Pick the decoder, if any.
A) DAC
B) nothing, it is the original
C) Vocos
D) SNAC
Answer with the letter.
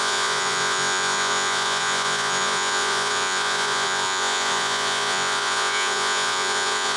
C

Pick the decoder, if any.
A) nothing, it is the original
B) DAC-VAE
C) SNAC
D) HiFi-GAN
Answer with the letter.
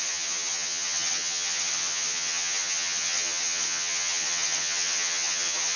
D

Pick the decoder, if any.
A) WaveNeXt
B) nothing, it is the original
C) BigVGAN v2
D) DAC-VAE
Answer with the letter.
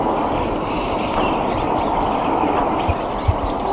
B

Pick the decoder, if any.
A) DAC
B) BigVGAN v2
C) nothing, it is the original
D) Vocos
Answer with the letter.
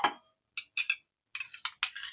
C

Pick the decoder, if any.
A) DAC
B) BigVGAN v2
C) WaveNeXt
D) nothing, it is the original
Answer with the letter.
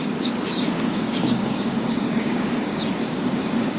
A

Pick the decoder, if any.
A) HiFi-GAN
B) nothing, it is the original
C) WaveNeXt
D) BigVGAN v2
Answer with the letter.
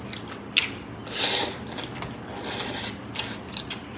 B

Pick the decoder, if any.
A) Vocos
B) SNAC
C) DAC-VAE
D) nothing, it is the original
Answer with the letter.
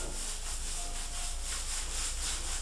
D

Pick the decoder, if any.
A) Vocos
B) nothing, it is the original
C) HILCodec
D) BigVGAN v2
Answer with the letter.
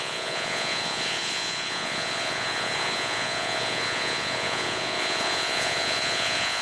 A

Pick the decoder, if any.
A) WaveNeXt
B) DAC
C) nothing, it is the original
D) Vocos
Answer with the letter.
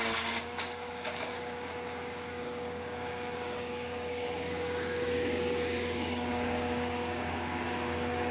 B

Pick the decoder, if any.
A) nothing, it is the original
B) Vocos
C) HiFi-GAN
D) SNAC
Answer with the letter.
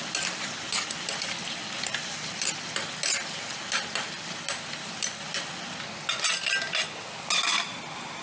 A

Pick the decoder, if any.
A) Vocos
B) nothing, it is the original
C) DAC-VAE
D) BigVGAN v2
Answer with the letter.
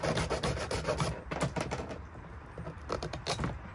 D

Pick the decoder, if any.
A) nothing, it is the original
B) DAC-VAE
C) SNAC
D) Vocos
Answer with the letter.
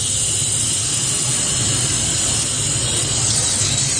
A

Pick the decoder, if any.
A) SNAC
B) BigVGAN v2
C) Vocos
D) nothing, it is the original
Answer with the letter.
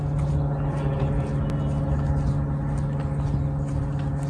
D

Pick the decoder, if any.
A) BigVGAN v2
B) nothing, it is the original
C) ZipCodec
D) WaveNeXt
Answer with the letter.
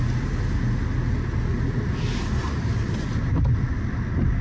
B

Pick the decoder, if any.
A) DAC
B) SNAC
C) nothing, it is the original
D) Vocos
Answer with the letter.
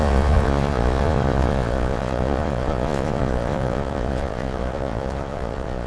D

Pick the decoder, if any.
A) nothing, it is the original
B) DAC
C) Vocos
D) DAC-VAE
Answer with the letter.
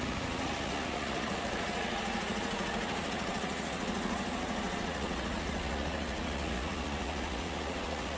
C